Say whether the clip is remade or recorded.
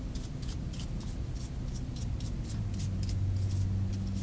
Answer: recorded